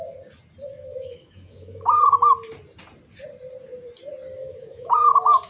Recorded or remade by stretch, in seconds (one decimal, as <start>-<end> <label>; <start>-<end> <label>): 0.0-0.7 recorded; 0.7-2.0 remade; 2.0-4.4 recorded; 4.4-5.1 remade; 5.1-5.5 recorded